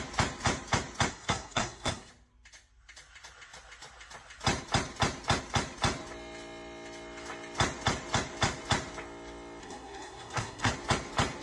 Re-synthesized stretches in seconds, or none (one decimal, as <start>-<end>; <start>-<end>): 1.1-2.1; 9.6-10.7